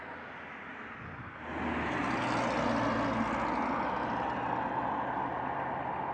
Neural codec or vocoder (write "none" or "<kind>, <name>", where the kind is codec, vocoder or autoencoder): none